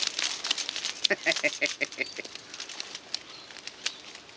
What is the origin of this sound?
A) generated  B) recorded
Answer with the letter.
A